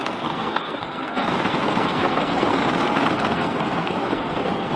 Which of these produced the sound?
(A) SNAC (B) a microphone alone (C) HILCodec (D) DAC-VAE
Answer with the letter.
A